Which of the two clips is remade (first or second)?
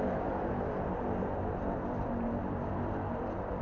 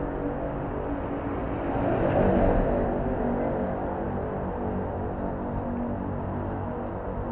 first